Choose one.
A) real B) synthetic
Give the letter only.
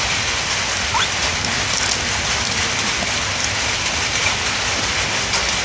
A